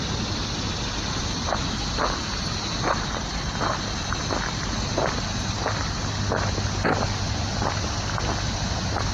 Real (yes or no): yes